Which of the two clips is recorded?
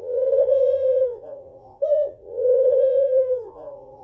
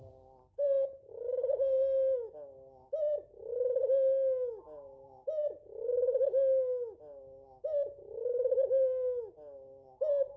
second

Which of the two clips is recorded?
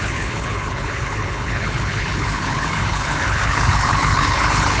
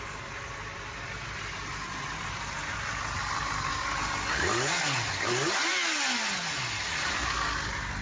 second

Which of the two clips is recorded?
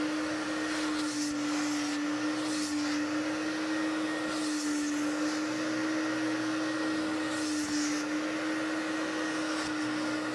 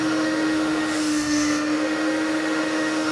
first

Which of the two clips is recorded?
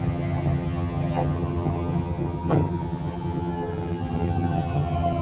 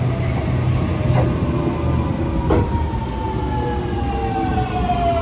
second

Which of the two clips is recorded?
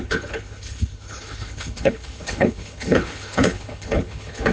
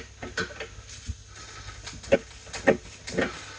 second